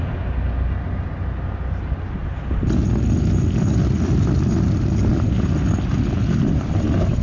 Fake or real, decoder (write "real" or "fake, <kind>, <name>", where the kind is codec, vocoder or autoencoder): real